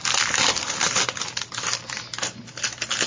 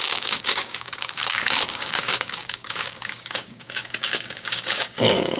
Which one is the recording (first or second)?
first